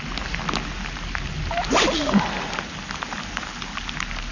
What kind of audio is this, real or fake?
real